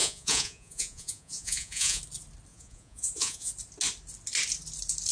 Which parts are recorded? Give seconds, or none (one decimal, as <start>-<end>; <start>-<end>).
2.0-2.5; 3.5-5.1